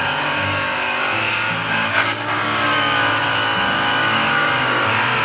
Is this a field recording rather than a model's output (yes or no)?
no